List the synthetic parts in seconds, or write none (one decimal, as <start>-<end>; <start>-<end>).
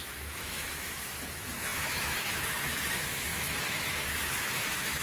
0.0-5.0